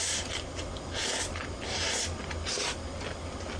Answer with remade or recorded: recorded